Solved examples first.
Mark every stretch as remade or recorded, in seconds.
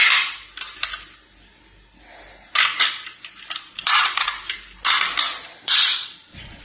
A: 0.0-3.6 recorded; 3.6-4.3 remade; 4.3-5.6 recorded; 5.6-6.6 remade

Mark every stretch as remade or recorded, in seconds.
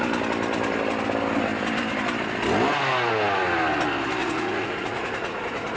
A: 0.0-4.2 recorded; 4.2-5.8 remade